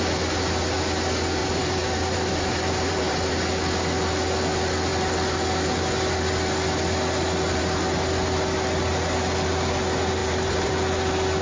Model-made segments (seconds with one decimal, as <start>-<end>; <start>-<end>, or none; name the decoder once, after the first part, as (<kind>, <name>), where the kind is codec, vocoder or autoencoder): 1.4-3.3 (vocoder, BigVGAN v2); 10.2-10.7